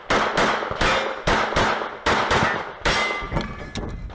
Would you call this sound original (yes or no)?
yes